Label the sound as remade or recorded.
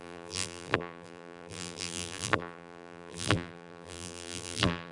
remade